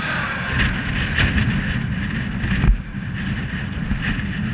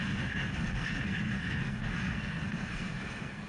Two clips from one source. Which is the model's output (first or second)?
second